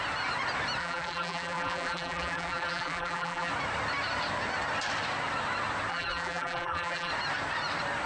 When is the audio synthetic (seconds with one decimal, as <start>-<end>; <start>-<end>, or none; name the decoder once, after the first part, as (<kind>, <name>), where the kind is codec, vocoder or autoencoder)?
0.8-3.5 (vocoder, BigVGAN v2); 5.9-7.1